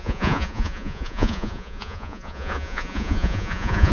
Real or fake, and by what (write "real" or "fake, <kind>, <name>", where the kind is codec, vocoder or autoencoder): fake, vocoder, Vocos